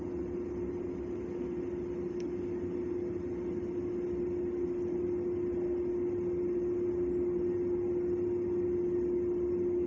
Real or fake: real